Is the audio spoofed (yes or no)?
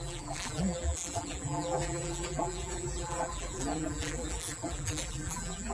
yes